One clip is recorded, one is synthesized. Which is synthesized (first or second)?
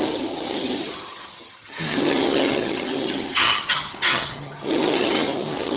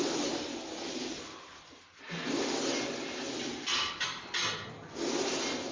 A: first